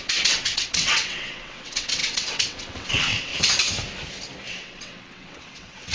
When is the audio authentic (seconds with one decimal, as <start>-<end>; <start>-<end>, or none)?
3.3-4.5